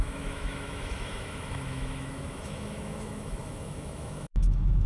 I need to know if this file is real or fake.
fake